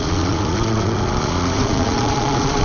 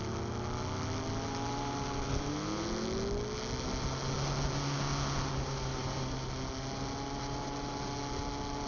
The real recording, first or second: second